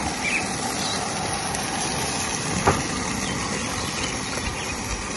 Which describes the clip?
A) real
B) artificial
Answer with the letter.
A